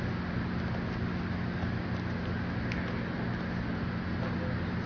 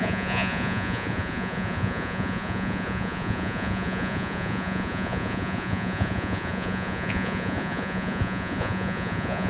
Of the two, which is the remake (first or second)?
second